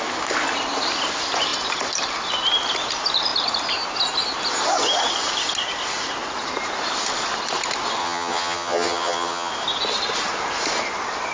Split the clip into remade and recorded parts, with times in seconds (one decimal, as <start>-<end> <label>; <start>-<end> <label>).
0.0-8.0 recorded; 8.0-9.5 remade; 9.5-11.3 recorded